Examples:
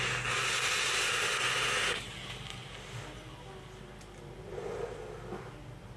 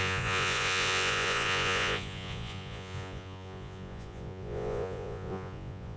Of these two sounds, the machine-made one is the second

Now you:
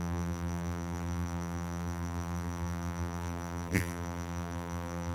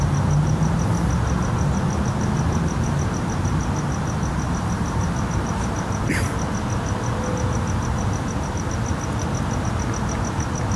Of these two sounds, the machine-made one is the first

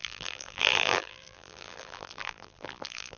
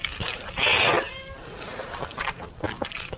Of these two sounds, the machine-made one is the first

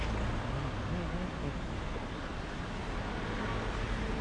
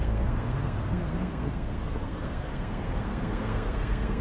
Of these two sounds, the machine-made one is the second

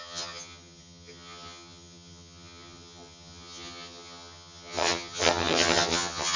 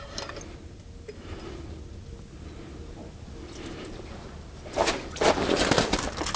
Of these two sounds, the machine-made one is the first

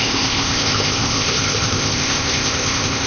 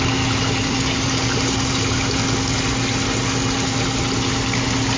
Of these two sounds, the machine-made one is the first